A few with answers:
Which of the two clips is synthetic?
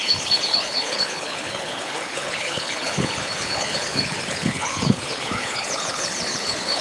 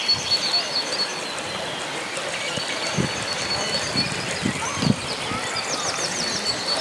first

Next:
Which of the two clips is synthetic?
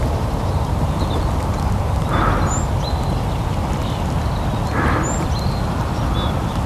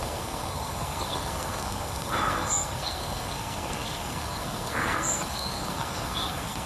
second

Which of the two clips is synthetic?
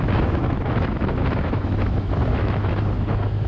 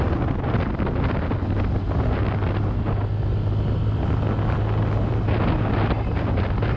first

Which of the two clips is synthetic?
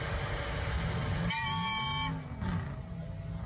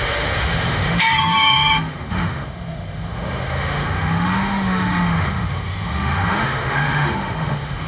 second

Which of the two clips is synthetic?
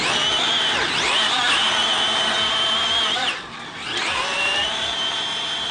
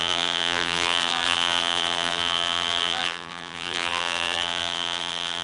second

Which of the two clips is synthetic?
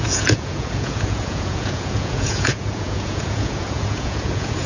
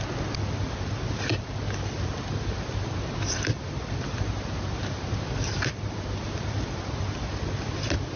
first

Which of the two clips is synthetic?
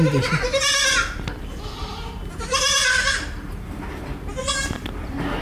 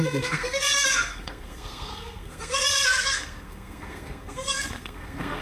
second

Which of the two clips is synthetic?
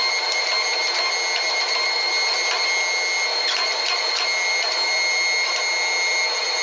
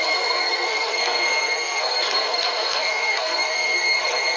second